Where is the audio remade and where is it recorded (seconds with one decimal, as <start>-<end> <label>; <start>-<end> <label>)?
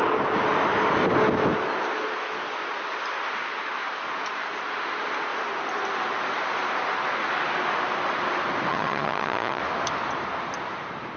0.0-8.7 recorded; 8.7-9.6 remade; 9.6-11.2 recorded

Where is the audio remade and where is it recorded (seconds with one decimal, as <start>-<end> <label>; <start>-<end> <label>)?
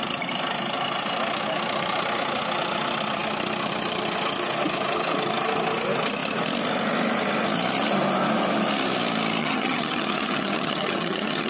0.0-9.4 recorded; 9.4-11.5 remade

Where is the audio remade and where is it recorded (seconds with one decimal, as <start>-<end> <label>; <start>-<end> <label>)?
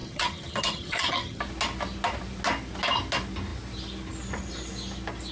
0.0-1.4 remade; 1.4-5.3 recorded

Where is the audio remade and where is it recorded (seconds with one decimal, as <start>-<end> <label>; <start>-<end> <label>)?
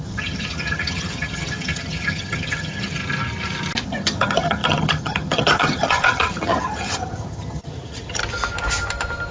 0.0-3.0 remade; 3.0-3.8 recorded; 3.8-8.2 remade; 8.2-9.3 recorded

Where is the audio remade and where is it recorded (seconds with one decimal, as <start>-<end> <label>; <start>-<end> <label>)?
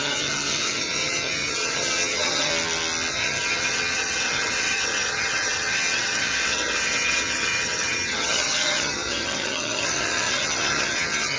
0.0-2.5 remade; 2.5-3.1 recorded; 3.1-11.4 remade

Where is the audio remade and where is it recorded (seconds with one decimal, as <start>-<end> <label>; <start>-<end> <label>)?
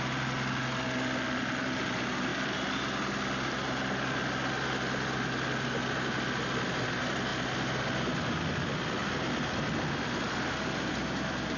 0.0-11.6 recorded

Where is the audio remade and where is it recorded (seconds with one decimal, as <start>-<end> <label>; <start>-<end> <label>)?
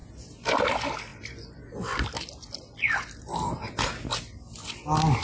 0.0-5.2 recorded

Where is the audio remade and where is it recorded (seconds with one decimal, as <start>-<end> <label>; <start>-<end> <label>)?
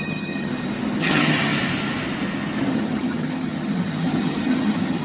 0.0-0.5 remade; 0.5-1.0 recorded; 1.0-1.5 remade; 1.5-2.7 recorded; 2.7-5.0 remade